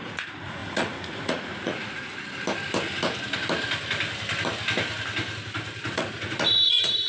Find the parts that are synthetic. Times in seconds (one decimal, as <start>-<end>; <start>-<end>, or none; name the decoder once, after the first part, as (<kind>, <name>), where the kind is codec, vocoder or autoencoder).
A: 0.0-2.1 (vocoder, Vocos); 5.9-7.1